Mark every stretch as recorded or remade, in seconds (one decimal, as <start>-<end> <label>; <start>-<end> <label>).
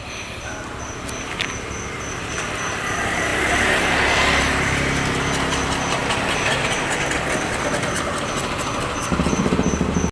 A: 0.0-10.1 recorded